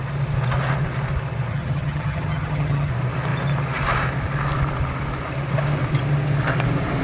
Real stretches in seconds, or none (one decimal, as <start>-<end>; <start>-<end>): 0.0-1.5; 2.9-7.0